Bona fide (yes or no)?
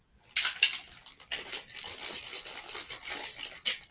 yes